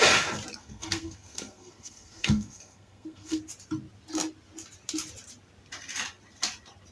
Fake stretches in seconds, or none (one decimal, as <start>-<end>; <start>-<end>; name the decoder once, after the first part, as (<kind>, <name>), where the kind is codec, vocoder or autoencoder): 0.6-3.4 (codec, SNAC)